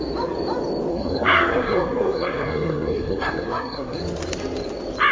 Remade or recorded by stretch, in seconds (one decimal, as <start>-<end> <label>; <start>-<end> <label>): 0.0-0.9 recorded; 0.9-4.0 remade; 4.0-5.1 recorded